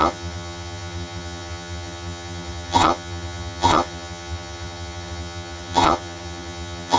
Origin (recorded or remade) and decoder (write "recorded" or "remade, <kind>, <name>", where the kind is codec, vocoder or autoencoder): remade, vocoder, HiFi-GAN